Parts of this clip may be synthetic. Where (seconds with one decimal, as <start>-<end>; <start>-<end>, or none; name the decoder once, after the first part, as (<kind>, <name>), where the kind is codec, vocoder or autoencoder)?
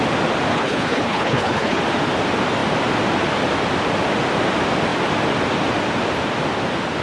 0.5-1.8 (codec, HILCodec)